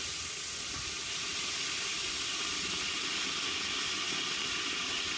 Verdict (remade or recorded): recorded